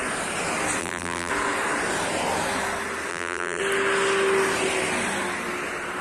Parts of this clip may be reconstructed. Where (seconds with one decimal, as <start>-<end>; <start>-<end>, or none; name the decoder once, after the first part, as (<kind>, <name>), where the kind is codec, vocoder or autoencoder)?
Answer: 0.8-1.3 (vocoder, BigVGAN v2); 3.1-3.6